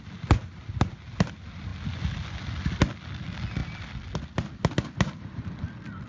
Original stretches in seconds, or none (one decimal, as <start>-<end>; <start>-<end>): 0.0-6.1